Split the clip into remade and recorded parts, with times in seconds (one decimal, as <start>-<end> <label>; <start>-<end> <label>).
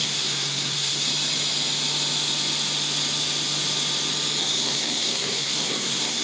0.0-1.1 remade; 1.1-4.4 recorded; 4.4-6.2 remade